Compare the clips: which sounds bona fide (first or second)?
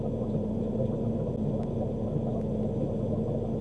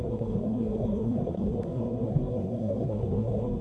first